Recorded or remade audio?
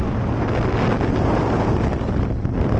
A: recorded